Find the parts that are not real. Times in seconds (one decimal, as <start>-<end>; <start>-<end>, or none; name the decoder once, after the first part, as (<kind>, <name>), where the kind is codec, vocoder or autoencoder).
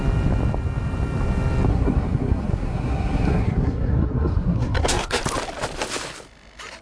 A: 1.7-5.2 (codec, SNAC)